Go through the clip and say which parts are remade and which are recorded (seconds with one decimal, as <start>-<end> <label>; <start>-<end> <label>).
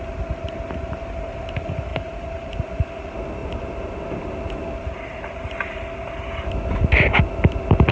0.0-1.9 recorded; 1.9-2.6 remade; 2.6-3.4 recorded; 3.4-4.3 remade; 4.3-7.9 recorded